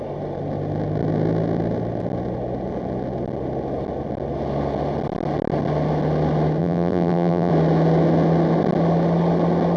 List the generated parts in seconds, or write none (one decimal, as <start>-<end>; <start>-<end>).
6.6-7.5